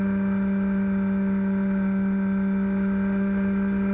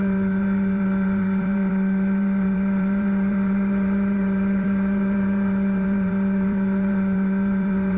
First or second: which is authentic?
first